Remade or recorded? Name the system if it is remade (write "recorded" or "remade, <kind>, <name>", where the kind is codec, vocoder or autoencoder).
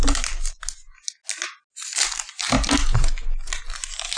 recorded